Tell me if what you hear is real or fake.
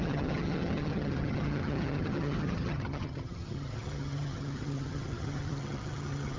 fake